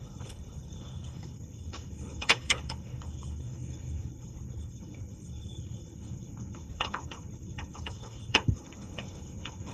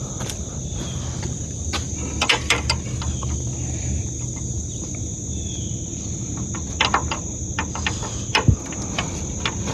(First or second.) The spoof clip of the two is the first